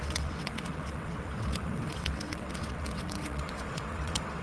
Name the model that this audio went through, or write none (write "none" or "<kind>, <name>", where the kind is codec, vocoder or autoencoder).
vocoder, WaveNeXt